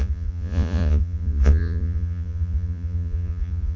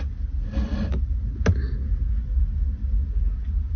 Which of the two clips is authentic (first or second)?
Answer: second